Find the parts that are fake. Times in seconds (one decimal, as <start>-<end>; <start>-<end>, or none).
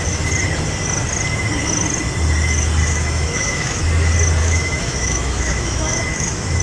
2.8-3.8; 4.4-6.6